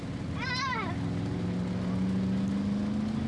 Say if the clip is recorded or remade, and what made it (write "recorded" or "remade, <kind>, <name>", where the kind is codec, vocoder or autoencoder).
recorded